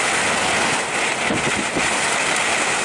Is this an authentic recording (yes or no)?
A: yes